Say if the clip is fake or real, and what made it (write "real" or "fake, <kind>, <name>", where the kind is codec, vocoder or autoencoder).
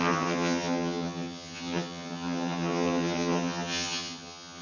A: fake, vocoder, HiFi-GAN